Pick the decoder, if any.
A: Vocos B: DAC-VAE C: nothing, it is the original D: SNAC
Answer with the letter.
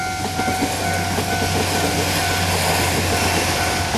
C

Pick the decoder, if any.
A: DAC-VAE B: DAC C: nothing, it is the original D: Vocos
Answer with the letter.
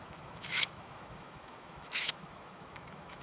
A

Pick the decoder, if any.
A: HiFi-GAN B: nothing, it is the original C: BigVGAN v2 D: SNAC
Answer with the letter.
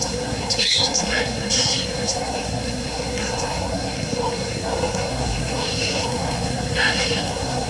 D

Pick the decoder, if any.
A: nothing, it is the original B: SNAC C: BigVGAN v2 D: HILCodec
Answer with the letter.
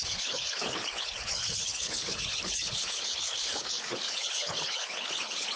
D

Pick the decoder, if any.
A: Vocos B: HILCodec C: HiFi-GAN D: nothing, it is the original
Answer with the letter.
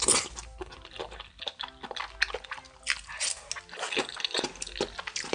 D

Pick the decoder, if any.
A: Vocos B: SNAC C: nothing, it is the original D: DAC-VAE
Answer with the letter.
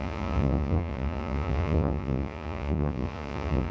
A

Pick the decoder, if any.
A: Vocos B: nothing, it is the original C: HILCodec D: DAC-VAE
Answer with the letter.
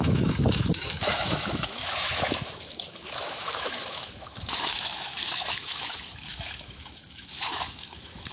D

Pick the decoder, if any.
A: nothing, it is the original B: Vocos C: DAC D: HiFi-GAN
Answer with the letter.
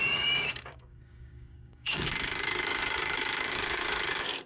C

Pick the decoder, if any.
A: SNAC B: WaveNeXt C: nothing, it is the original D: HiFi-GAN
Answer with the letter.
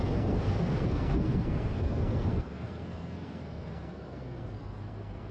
A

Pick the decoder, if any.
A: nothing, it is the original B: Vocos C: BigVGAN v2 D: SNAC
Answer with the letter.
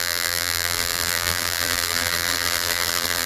C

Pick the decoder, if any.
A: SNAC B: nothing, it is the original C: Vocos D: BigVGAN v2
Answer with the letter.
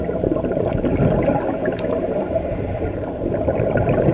D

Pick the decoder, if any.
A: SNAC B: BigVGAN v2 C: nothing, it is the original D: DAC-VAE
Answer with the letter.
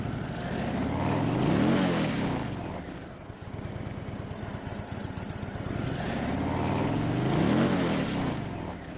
C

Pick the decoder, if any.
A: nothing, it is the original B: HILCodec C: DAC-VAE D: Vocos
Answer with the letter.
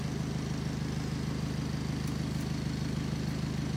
A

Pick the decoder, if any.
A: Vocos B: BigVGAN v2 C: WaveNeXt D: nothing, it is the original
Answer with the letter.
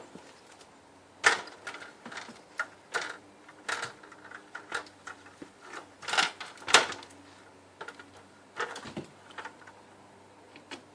D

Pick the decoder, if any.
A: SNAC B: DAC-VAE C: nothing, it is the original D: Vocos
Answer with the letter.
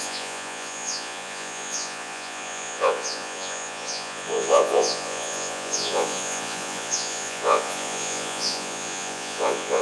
D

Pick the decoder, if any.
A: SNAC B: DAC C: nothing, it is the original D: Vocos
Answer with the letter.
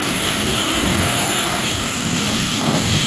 B